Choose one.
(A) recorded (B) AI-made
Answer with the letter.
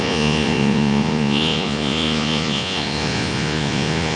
B